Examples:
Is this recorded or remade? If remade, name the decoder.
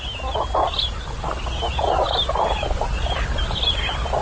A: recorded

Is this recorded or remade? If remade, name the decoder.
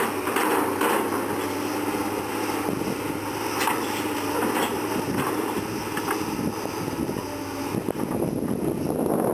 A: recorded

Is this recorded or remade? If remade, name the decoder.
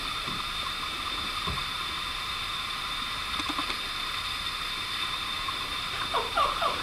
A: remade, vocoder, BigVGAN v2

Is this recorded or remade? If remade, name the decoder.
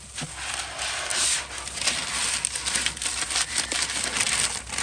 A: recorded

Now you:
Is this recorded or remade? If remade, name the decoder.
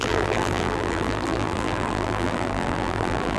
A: remade, vocoder, BigVGAN v2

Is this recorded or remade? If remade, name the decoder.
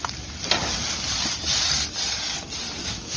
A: recorded